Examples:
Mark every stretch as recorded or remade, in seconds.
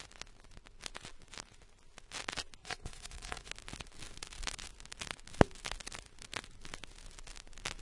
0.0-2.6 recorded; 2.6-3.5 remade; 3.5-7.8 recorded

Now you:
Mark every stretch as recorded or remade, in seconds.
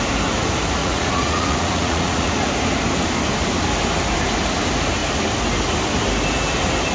0.0-0.8 recorded; 0.8-2.3 remade; 2.3-6.9 recorded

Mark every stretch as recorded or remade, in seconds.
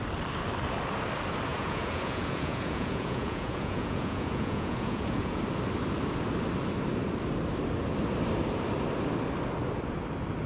0.0-1.5 recorded; 1.5-5.4 remade; 5.4-10.5 recorded